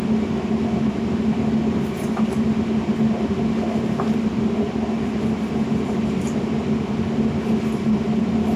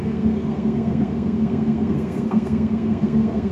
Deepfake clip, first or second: second